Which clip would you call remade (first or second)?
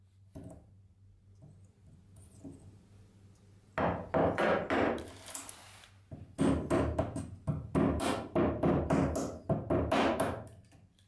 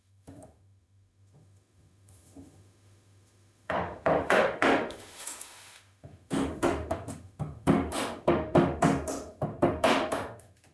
second